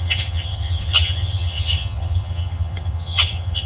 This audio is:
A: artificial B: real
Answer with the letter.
A